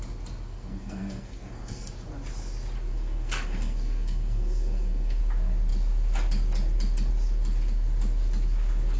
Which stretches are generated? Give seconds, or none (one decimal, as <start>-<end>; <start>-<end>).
0.5-1.9; 2.9-5.2